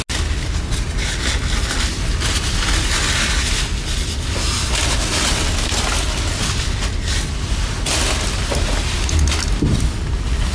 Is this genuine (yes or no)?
yes